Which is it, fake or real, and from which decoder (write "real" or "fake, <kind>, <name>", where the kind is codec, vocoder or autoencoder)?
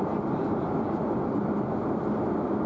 real